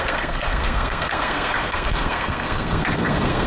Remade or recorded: remade